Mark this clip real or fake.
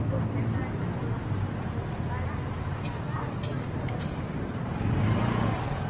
real